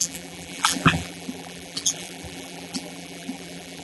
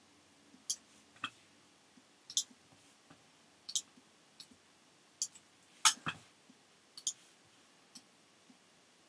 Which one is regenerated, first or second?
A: first